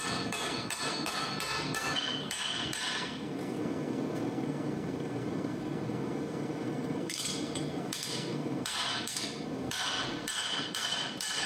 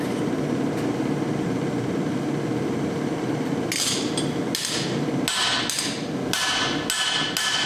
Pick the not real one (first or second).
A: first